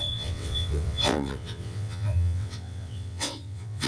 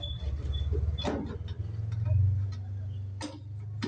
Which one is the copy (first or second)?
first